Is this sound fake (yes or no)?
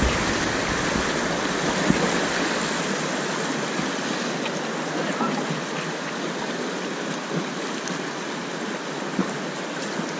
no